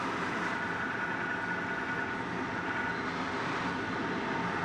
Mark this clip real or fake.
real